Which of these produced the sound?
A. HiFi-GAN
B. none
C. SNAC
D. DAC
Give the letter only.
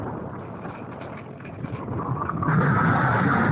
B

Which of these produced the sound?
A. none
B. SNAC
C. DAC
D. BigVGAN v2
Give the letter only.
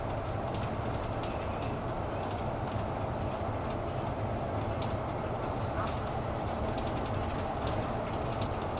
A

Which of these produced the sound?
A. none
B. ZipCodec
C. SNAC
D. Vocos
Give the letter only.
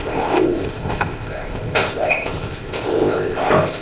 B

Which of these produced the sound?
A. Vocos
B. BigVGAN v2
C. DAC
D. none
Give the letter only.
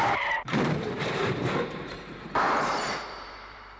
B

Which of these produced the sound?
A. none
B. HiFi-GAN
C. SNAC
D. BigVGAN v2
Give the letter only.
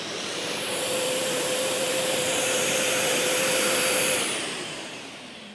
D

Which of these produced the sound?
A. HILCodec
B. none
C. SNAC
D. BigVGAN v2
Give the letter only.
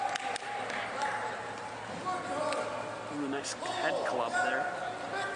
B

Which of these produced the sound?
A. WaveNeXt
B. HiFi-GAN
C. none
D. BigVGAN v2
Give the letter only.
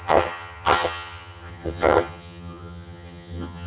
B